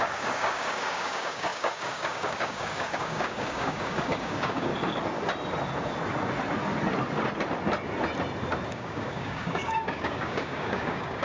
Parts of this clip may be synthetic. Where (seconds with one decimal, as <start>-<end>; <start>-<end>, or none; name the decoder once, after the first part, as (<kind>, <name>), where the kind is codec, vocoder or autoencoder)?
0.0-4.7 (codec, DAC); 8.7-11.2